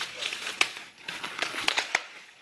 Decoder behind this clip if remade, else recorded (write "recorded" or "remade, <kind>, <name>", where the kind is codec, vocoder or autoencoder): remade, vocoder, Vocos